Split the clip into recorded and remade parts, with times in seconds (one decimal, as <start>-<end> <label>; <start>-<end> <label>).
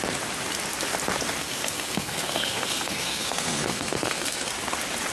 0.0-1.4 recorded; 1.4-4.5 remade; 4.5-5.1 recorded